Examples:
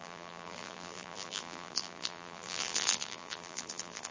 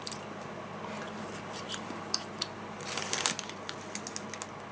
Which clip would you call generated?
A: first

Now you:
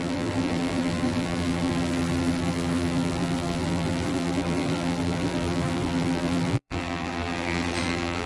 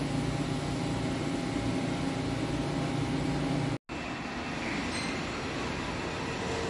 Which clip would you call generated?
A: first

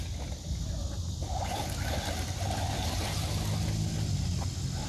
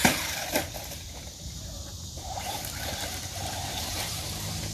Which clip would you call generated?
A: second